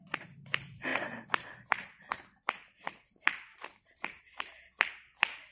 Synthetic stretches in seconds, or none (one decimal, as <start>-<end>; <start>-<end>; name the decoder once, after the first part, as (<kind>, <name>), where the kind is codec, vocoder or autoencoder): none